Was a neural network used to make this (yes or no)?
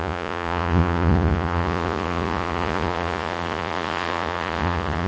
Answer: yes